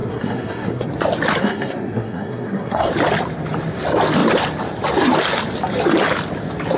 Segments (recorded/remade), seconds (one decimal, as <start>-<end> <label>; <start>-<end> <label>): 0.0-0.9 remade; 0.9-1.4 recorded; 1.4-2.9 remade; 2.9-6.8 recorded